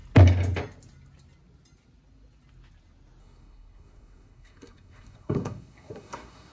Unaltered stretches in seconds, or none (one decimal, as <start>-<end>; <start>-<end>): 0.0-3.2